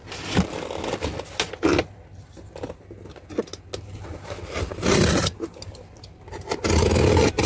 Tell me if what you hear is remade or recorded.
recorded